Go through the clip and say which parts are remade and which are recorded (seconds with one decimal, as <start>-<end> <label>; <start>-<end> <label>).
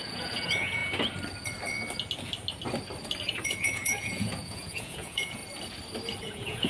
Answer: 0.0-0.8 remade; 0.8-3.2 recorded; 3.2-5.4 remade; 5.4-6.2 recorded; 6.2-6.7 remade